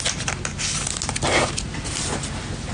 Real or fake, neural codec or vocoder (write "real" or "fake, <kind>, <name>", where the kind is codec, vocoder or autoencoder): real